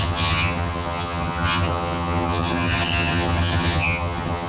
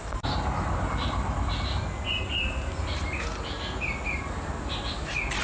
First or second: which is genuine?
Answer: second